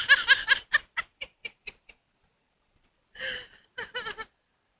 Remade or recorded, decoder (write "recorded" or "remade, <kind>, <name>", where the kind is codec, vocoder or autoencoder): recorded